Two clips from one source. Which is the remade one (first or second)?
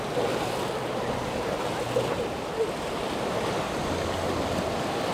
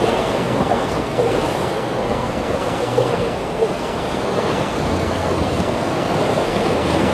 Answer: second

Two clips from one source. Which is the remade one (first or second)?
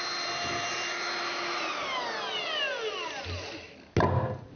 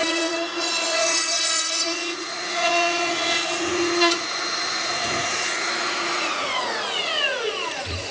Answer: second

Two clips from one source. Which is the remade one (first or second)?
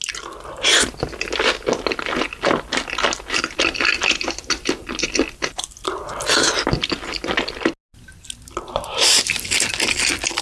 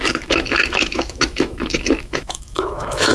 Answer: second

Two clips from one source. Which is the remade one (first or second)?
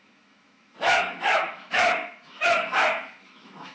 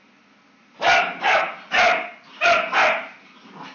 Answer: first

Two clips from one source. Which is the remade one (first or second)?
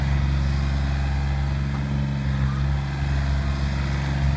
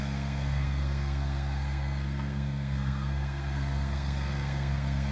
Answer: second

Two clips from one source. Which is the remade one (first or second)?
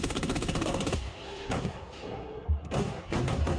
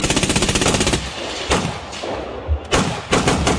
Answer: first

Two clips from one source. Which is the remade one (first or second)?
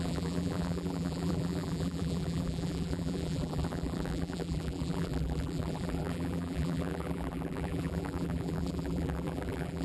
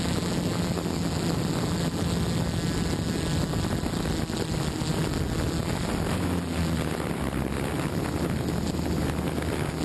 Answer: first